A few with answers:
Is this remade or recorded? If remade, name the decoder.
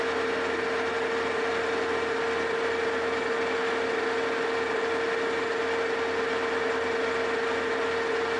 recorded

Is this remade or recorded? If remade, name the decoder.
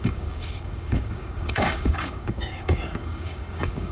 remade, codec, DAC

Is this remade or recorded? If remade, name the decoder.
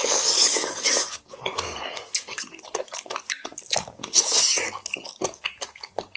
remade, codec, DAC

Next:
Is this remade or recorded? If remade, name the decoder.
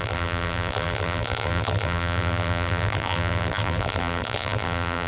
remade, vocoder, BigVGAN v2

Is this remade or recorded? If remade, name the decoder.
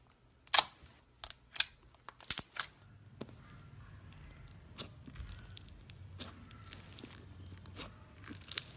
recorded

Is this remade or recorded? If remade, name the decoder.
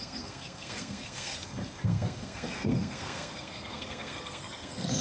remade, codec, SNAC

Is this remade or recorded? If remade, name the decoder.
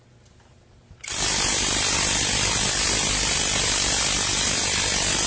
recorded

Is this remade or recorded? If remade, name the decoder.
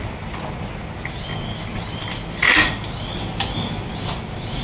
recorded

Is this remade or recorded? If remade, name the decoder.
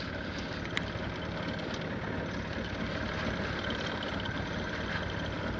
recorded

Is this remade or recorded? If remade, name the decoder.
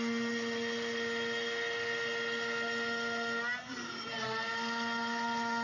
recorded